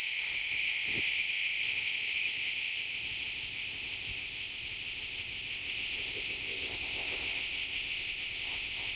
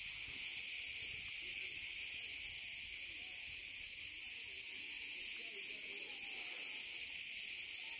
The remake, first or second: first